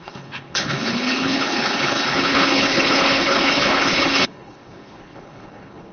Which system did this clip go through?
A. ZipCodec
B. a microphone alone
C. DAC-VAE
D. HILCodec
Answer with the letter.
D